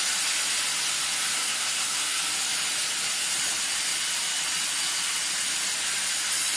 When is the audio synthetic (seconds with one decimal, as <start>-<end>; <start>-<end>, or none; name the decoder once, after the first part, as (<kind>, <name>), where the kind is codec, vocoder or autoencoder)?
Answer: 1.3-2.2 (codec, SNAC)